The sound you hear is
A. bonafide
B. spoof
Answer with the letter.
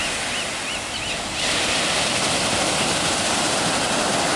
A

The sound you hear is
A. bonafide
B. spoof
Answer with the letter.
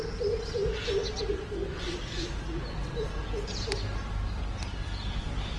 A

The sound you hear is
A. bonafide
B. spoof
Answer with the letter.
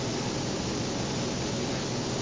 A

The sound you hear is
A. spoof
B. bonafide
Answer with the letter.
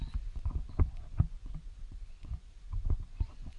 A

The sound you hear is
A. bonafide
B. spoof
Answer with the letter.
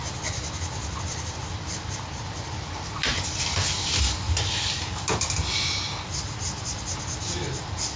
A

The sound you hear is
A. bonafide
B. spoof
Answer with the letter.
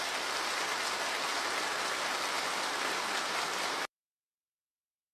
A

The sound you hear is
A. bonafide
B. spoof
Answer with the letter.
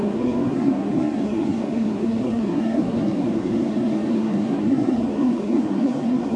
B